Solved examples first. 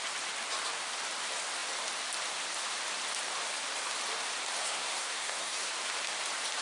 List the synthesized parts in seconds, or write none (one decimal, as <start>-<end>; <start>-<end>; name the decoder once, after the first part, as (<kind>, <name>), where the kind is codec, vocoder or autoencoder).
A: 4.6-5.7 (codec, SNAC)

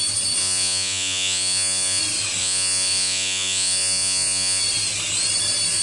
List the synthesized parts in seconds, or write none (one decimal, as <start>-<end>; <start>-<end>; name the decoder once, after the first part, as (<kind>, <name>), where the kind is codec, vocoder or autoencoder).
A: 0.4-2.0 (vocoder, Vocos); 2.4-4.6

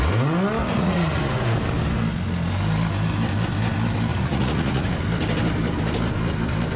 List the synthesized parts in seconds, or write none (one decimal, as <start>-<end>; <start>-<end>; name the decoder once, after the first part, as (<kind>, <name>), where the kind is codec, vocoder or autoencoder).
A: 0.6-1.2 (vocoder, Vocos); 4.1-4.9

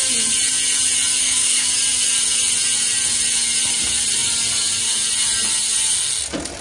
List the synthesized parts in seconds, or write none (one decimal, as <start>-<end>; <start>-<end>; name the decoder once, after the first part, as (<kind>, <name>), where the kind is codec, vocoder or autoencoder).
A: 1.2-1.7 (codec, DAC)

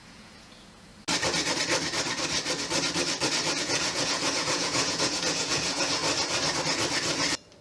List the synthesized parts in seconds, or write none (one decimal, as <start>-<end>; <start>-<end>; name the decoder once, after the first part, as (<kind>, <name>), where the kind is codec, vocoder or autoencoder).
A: 0.0-0.9 (vocoder, Vocos); 3.6-6.0

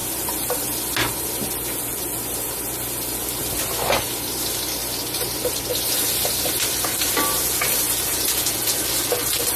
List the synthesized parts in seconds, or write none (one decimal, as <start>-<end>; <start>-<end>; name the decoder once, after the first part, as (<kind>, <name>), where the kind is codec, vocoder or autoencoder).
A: 8.1-8.8 (vocoder, Vocos)

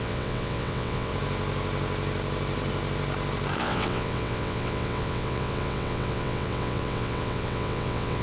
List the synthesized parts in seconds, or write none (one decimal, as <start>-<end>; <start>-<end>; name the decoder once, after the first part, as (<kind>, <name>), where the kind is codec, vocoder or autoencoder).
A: 0.0-1.1 (vocoder, WaveNeXt); 3.6-8.2

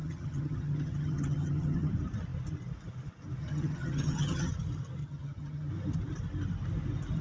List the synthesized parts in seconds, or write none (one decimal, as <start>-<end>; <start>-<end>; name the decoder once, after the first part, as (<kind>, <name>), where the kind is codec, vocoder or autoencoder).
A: 0.0-1.9 (vocoder, HiFi-GAN); 3.4-4.5; 5.0-5.7